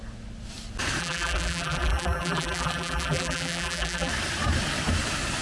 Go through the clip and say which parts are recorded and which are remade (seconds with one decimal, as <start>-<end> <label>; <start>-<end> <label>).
0.0-1.0 recorded; 1.0-4.1 remade; 4.1-5.4 recorded